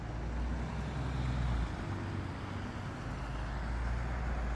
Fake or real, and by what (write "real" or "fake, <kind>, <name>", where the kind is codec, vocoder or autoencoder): real